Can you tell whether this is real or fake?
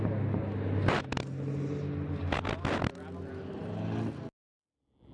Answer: real